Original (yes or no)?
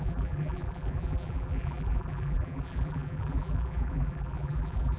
no